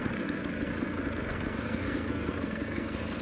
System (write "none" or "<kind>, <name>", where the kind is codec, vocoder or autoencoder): codec, SNAC